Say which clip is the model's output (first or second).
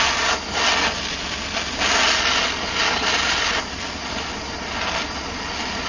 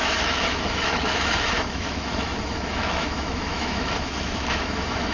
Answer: second